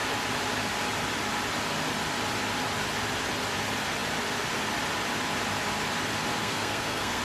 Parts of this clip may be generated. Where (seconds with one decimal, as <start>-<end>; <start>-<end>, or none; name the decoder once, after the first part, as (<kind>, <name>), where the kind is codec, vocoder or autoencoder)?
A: 6.4-7.2 (codec, SNAC)